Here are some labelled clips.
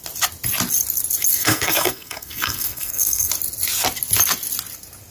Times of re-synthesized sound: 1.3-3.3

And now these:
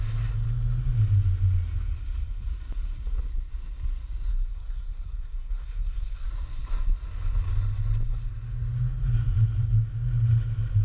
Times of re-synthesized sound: 4.3-6.3

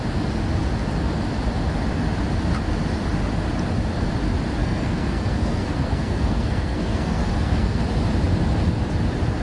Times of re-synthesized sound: 4.6-7.8

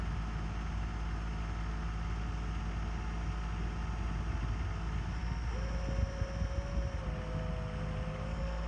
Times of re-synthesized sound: none

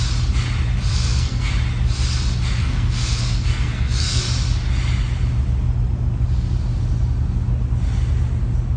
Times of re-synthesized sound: 0.9-1.5; 2.6-4.2

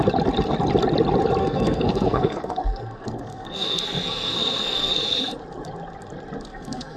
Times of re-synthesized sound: 1.4-5.2; 6.5-7.0

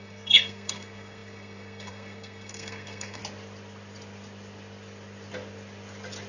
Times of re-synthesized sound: 0.0-3.2

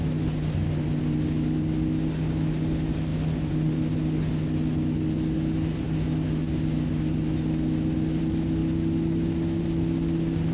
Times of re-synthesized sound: none